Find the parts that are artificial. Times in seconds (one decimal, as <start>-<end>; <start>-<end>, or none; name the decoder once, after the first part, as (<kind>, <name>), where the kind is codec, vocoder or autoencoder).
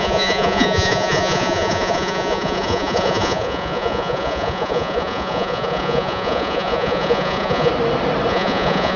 0.0-7.7 (vocoder, Vocos); 8.3-9.0